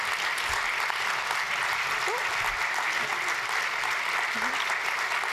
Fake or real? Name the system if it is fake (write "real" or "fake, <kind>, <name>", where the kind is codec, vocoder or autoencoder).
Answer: real